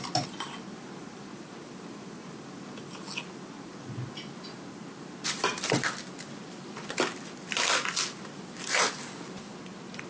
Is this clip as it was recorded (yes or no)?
yes